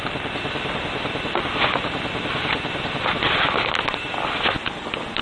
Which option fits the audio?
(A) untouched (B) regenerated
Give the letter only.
A